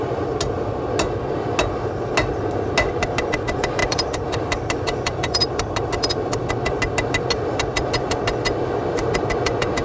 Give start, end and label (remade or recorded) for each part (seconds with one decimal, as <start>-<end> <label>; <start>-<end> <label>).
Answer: 0.0-3.8 recorded; 3.8-5.5 remade; 5.5-9.8 recorded